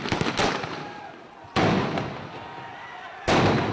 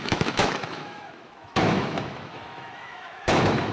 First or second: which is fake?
second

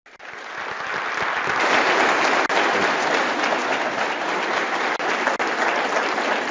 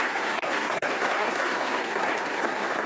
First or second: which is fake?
second